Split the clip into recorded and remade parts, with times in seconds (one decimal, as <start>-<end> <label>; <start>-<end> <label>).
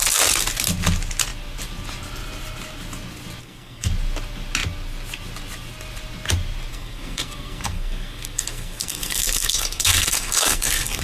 0.0-3.4 recorded; 3.4-3.9 remade; 3.9-6.7 recorded; 6.7-11.0 remade